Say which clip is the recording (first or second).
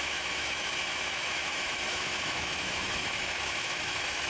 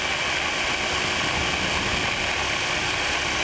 second